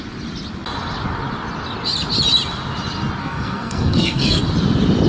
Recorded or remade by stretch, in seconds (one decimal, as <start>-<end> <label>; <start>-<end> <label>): 0.0-3.2 recorded; 3.2-4.4 remade; 4.4-5.1 recorded